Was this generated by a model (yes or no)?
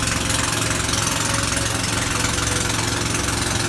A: no